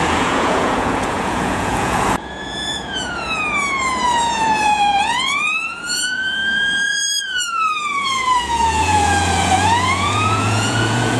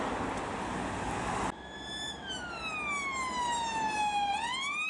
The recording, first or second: second